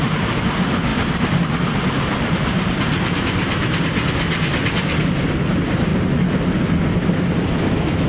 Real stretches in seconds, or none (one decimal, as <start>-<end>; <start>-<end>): 0.0-8.1